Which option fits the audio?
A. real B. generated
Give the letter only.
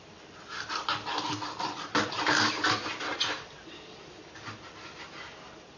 A